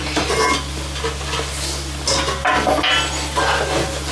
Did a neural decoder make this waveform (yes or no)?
no